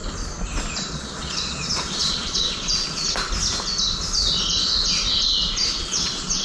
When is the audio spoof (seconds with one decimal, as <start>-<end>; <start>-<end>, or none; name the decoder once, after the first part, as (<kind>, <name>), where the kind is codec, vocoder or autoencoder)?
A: 0.7-3.0 (vocoder, Vocos); 5.6-6.4